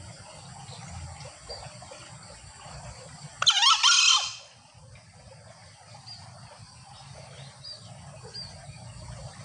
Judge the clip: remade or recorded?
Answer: recorded